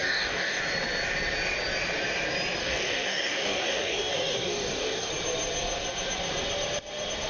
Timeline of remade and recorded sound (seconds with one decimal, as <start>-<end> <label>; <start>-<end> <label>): 0.0-0.6 remade; 0.6-2.6 recorded; 2.6-5.1 remade; 5.1-7.3 recorded